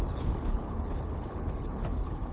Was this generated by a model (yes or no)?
yes